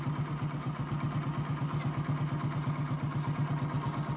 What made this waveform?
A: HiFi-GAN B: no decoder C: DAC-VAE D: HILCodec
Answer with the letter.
B